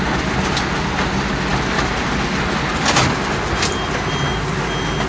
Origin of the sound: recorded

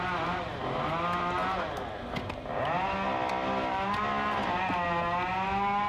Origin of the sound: recorded